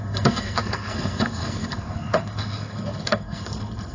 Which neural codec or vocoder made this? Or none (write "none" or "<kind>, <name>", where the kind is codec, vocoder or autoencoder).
codec, SNAC